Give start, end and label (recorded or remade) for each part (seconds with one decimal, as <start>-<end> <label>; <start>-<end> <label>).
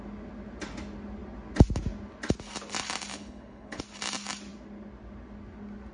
0.0-3.1 recorded; 3.1-3.8 remade; 3.8-5.9 recorded